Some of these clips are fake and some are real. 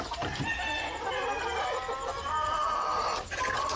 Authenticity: real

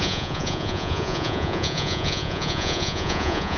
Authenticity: fake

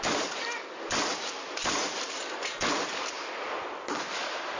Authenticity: real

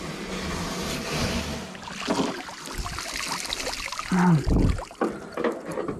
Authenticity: real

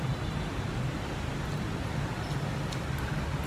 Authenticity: real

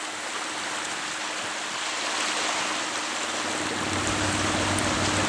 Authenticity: real